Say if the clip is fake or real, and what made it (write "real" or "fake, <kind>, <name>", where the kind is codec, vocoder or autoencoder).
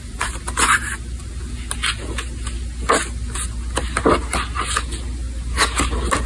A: real